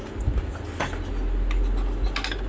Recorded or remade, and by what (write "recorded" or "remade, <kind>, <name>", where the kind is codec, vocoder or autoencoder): recorded